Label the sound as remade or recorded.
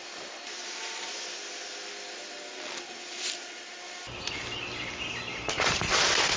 recorded